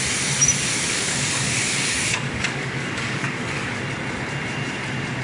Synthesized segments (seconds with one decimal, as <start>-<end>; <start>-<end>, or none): 0.7-3.8

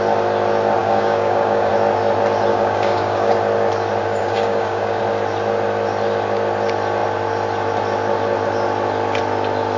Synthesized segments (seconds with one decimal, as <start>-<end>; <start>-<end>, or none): 0.8-1.7; 2.5-3.3; 4.2-5.0

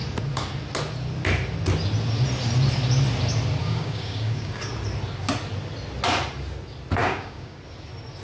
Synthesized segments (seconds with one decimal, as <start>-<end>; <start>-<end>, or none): 3.6-4.7; 7.0-7.6